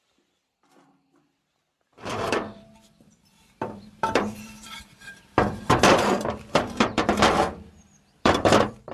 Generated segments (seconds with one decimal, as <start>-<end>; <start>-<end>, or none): 0.0-8.9